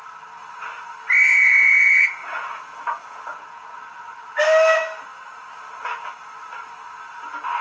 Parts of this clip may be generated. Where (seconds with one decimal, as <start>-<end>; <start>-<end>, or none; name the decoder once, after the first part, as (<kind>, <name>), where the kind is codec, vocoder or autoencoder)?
1.3-3.8 (vocoder, Vocos)